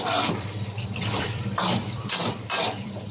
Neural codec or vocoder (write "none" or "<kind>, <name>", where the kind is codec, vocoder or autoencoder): vocoder, BigVGAN v2